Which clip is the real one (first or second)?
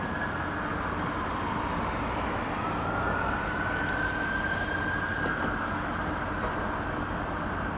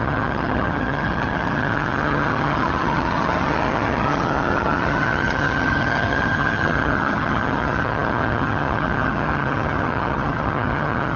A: first